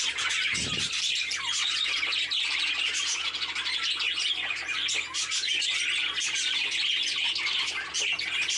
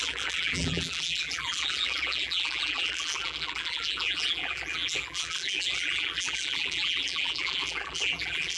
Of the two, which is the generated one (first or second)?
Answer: second